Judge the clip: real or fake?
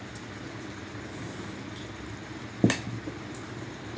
real